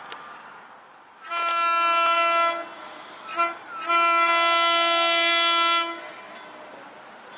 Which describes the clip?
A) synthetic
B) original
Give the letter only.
B